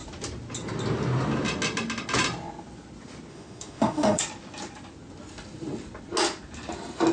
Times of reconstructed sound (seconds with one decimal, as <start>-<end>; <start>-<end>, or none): 3.3-4.2